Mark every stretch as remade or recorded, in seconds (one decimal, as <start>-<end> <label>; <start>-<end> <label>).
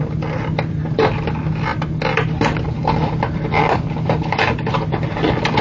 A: 0.0-5.6 recorded